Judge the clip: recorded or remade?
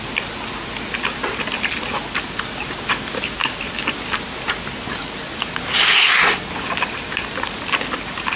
recorded